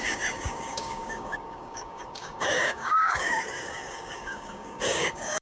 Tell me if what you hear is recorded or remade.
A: remade